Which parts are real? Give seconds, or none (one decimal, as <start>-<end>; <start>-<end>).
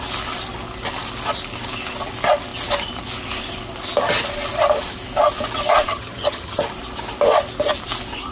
0.0-5.9; 6.6-8.3